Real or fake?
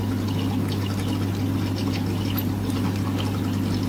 real